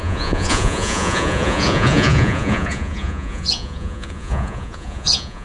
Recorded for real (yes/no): no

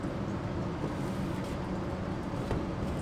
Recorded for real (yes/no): yes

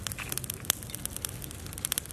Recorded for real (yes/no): yes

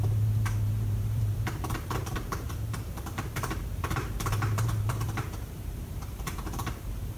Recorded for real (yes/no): no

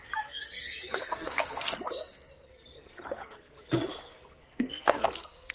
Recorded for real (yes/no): no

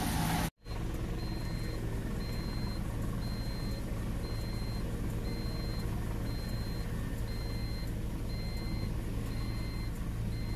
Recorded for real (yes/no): yes